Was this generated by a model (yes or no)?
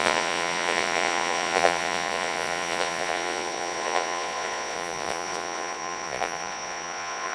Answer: yes